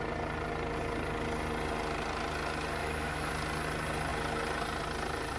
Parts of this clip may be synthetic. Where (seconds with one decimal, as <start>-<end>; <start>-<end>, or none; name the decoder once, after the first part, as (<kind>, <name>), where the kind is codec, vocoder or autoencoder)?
2.8-3.3 (autoencoder, DAC-VAE)